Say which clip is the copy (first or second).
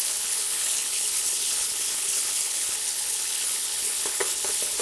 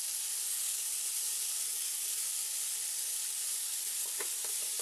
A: first